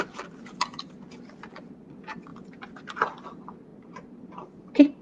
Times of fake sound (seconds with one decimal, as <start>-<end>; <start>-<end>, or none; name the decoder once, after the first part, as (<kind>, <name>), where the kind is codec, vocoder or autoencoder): none